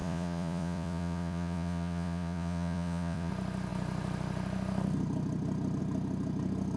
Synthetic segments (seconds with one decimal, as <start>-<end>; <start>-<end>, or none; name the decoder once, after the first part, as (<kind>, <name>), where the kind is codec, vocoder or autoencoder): 0.0-3.3 (vocoder, Vocos)